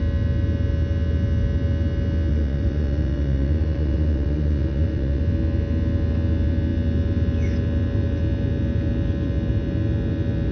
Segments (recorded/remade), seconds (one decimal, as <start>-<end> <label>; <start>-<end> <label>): 0.0-2.3 recorded; 2.3-5.2 remade; 5.2-10.5 recorded